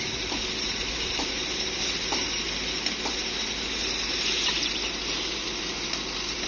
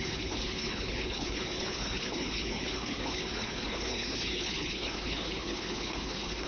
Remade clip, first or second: second